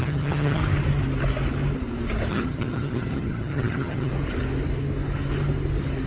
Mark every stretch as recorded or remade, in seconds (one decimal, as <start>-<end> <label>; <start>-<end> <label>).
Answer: 0.0-0.6 remade; 0.6-2.3 recorded; 2.3-4.1 remade; 4.1-6.1 recorded